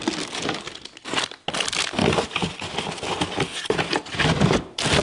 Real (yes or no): yes